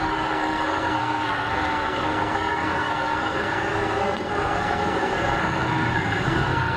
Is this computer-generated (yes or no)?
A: yes